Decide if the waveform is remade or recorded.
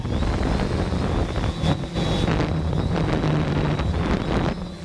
recorded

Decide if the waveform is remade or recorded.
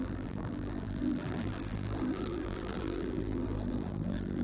remade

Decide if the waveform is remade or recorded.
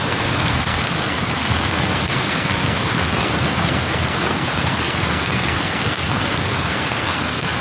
remade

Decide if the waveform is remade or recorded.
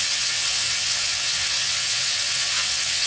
remade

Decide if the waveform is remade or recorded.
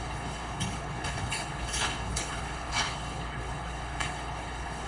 remade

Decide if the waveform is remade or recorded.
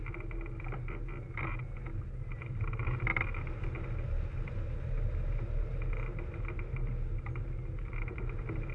recorded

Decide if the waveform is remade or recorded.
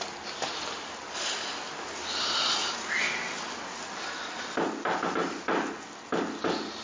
recorded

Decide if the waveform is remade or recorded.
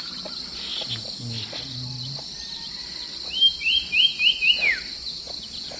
recorded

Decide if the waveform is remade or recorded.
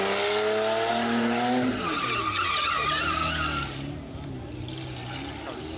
recorded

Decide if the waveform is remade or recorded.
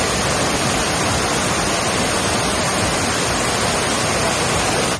recorded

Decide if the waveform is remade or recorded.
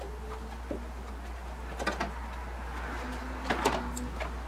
recorded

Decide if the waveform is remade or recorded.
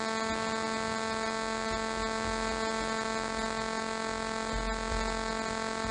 recorded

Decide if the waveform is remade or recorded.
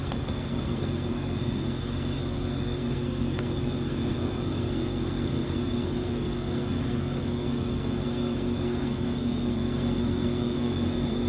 remade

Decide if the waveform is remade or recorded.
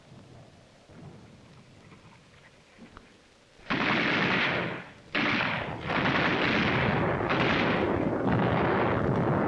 recorded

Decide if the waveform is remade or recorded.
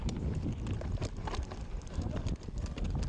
recorded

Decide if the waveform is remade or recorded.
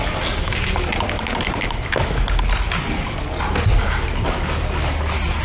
recorded